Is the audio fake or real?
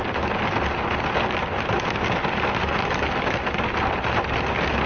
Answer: real